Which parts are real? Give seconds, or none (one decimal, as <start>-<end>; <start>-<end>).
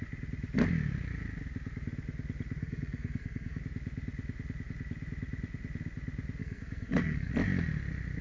0.0-2.6; 3.6-6.4; 7.3-8.2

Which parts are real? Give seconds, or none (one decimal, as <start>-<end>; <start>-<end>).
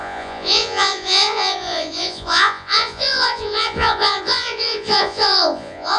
none